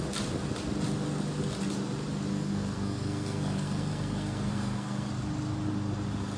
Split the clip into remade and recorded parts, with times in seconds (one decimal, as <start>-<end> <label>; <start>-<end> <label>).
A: 0.0-2.3 recorded; 2.3-5.1 remade; 5.1-6.4 recorded